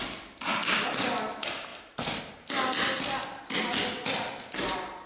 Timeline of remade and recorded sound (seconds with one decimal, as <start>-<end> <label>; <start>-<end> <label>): 0.0-5.1 recorded